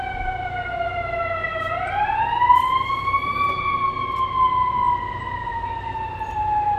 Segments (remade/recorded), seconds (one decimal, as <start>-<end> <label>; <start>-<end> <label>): 0.0-6.8 recorded

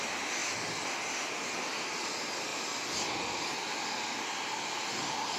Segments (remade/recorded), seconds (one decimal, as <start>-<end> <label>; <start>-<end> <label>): 0.0-5.4 recorded

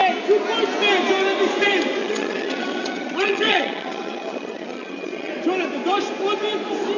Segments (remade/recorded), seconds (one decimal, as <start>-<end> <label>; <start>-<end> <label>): 0.0-2.0 recorded; 2.0-5.3 remade; 5.3-7.0 recorded

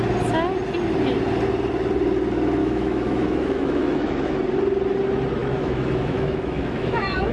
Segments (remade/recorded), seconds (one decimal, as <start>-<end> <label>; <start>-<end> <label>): 0.0-2.6 recorded; 2.6-4.3 remade; 4.3-5.4 recorded; 5.4-7.3 remade

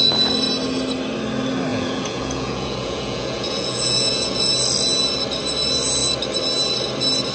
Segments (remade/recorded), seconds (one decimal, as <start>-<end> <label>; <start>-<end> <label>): 0.0-1.7 recorded; 1.7-4.5 remade; 4.5-7.3 recorded